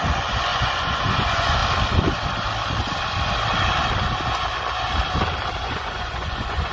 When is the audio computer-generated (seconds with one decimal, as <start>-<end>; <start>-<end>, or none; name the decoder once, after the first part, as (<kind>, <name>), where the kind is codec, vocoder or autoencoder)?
0.0-1.6 (vocoder, Vocos); 5.6-6.7